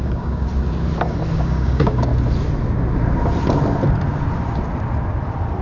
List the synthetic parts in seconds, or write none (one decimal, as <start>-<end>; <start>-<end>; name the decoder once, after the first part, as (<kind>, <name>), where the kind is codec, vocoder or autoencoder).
0.0-0.5 (codec, DAC); 1.4-2.1